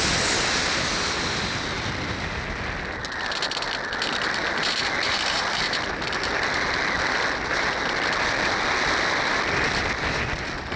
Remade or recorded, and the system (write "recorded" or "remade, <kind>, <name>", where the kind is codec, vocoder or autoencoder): recorded